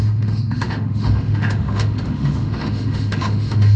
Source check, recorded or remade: remade